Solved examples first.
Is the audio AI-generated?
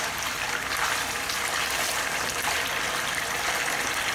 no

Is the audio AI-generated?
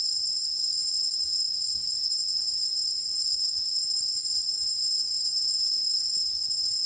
yes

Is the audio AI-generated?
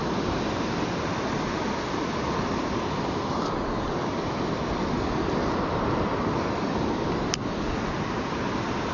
no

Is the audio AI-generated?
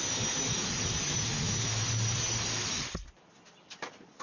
no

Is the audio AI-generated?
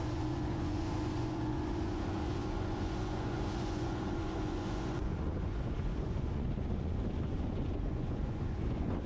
yes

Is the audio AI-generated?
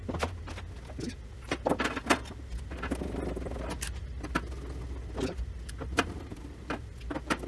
no